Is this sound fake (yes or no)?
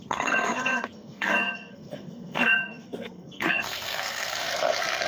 yes